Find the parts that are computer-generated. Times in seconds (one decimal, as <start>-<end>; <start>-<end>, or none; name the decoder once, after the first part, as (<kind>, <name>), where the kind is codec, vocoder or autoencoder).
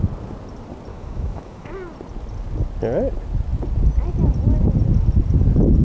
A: 0.9-1.7 (autoencoder, DAC-VAE)